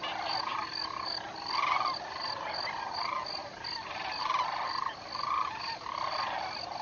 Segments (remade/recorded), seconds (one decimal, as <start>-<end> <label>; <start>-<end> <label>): 0.0-6.8 recorded